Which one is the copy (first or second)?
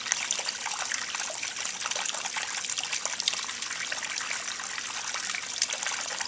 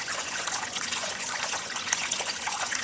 second